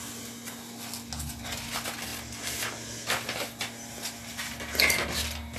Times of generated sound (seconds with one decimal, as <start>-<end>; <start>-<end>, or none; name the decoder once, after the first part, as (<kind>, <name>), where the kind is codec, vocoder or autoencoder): none